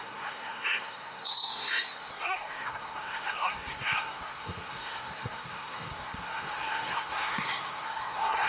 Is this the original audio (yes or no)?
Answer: no